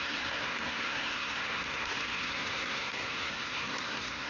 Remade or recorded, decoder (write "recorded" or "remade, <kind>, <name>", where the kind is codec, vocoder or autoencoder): remade, codec, SNAC